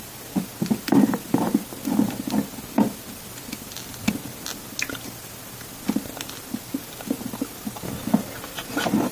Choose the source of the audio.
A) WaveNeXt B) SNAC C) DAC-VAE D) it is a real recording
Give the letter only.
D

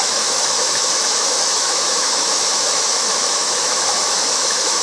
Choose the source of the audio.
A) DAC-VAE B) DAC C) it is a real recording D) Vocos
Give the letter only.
A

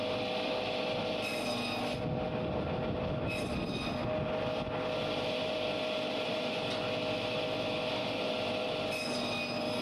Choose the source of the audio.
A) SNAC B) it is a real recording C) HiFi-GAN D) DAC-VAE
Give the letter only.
B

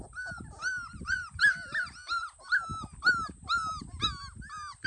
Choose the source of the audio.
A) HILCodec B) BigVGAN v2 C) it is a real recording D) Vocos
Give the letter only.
C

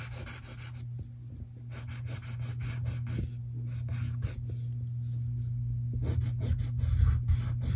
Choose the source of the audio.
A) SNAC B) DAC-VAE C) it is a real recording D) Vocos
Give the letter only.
C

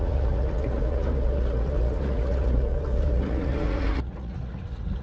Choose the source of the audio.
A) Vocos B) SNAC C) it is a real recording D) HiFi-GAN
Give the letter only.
A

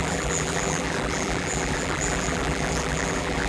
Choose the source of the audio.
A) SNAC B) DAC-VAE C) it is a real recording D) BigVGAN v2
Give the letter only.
D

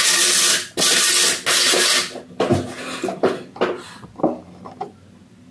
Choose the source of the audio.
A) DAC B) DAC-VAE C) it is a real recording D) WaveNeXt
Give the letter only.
C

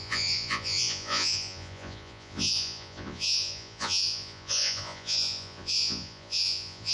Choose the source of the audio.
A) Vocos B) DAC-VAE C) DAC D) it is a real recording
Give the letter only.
A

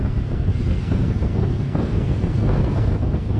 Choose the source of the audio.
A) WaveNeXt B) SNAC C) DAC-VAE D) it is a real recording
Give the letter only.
B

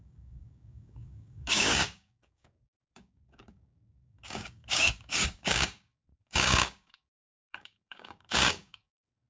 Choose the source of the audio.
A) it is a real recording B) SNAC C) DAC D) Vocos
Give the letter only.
C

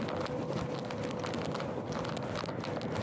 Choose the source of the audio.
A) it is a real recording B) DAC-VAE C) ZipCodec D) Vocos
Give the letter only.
A